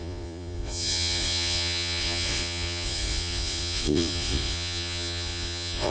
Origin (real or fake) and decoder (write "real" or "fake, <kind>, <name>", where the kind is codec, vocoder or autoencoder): fake, vocoder, Vocos